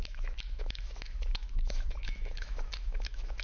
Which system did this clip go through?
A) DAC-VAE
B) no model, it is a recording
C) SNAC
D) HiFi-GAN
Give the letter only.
A